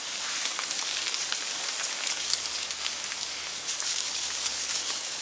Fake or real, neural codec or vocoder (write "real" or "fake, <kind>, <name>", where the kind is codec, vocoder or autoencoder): fake, codec, DAC